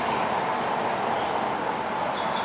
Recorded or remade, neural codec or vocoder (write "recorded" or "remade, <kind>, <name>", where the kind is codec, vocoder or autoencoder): recorded